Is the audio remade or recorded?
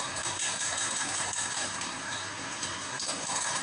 remade